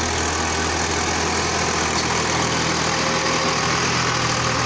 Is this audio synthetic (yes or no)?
no